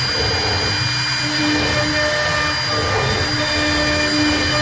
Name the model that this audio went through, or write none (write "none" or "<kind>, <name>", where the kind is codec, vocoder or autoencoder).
none